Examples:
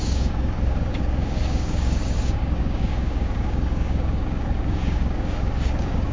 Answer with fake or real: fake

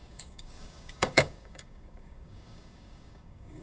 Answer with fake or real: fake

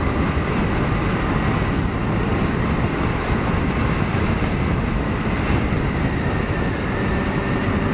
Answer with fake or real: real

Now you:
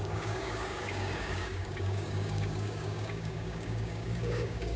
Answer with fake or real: fake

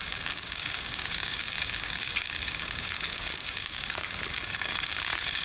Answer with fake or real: fake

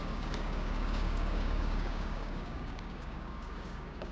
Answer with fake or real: fake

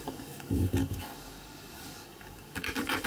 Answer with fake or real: fake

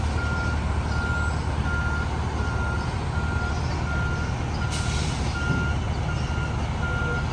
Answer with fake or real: real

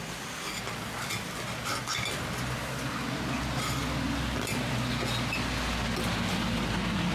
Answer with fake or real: real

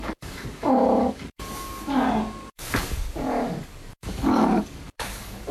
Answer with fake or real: fake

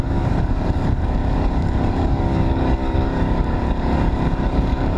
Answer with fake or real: fake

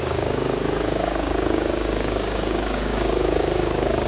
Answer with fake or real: fake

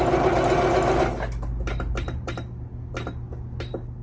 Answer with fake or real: real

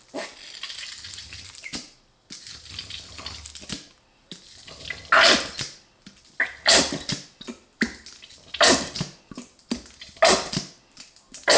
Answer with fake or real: real